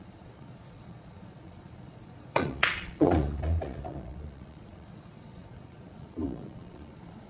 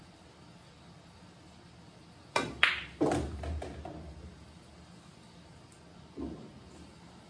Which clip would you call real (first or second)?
second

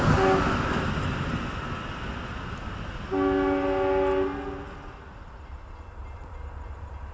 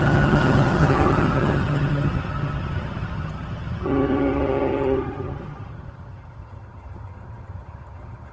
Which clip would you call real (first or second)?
first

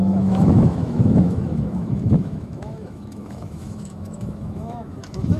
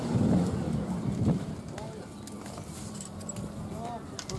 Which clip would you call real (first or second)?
second